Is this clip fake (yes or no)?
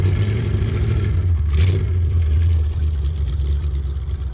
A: yes